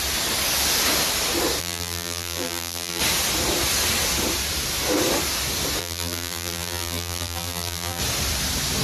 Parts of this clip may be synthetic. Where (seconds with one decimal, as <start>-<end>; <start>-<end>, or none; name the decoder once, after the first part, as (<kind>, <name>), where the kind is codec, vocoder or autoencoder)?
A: 1.6-3.0 (vocoder, BigVGAN v2); 5.8-8.0